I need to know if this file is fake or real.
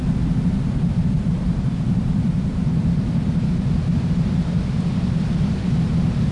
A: fake